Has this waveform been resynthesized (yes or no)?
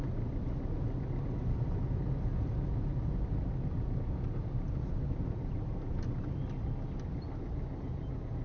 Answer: no